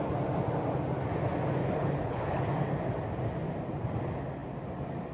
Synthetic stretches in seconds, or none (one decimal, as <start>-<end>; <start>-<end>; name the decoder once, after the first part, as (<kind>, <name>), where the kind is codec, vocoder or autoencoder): 1.6-2.4 (codec, HILCodec)